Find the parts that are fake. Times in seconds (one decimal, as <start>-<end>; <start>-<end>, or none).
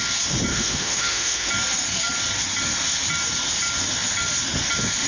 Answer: 0.5-1.5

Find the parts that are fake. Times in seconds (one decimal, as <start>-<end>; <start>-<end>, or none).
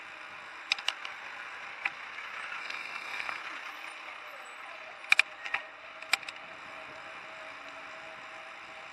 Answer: 2.6-3.4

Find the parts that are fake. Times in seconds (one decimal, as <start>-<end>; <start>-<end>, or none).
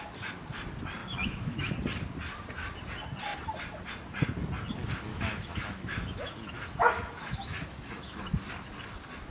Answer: 1.0-1.7; 5.1-8.2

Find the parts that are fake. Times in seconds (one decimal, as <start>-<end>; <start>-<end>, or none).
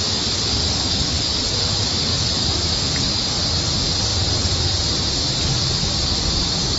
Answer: 2.1-3.2; 4.1-5.1